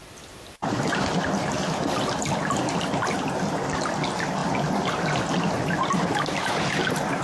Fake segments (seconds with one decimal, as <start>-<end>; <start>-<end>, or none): none